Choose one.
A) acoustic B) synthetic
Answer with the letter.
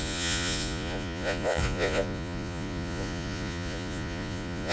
B